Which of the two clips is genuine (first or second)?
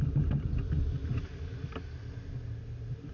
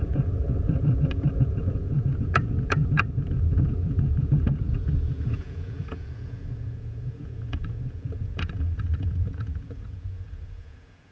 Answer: first